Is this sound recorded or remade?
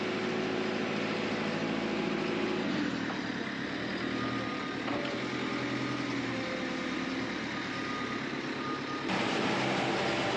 recorded